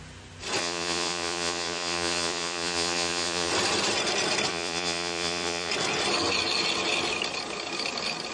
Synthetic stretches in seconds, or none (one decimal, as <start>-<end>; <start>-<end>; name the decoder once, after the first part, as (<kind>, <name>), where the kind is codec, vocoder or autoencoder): 0.6-3.5 (vocoder, Vocos); 4.5-5.7